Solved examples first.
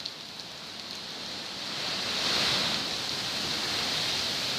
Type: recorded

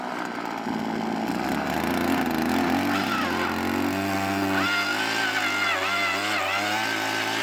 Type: recorded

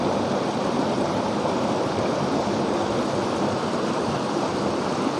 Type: recorded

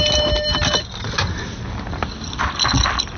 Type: recorded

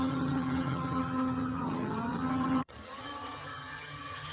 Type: remade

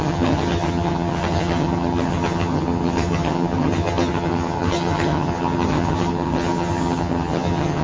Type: remade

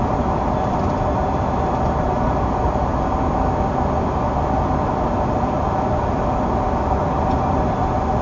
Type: recorded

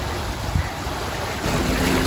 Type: recorded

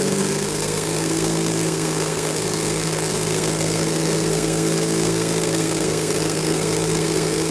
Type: remade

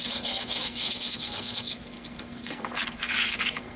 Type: remade